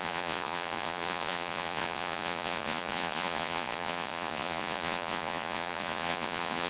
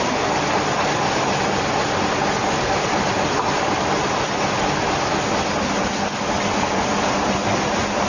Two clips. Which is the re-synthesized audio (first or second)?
first